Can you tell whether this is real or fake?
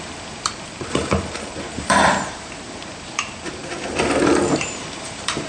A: fake